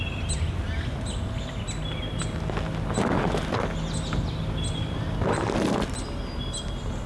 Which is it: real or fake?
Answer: real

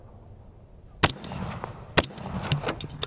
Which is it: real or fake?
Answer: real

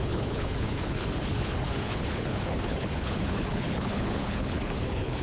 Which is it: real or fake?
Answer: fake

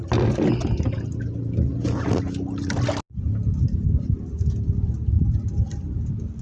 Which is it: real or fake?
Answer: real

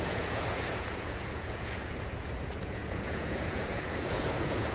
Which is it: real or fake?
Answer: fake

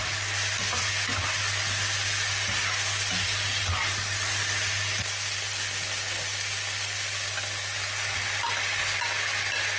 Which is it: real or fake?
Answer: real